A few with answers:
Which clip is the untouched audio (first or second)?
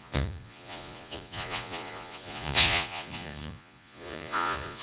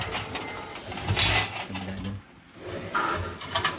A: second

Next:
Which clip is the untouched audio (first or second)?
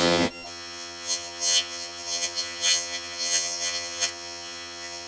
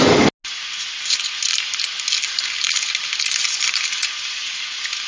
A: second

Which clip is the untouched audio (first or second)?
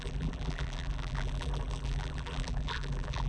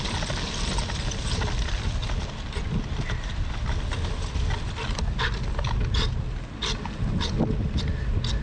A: second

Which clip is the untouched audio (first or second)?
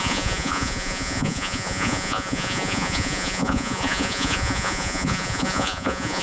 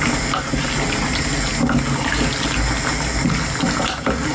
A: second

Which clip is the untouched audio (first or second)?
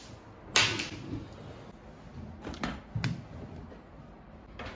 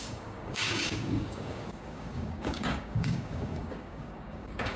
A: first